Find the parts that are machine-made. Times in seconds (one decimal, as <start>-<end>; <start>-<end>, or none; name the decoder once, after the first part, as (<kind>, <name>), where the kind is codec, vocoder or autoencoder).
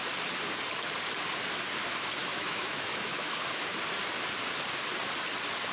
2.2-3.4 (autoencoder, DAC-VAE)